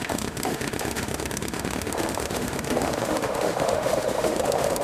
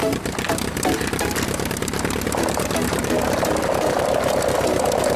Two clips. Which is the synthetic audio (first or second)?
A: first